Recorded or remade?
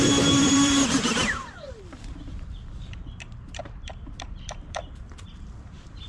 remade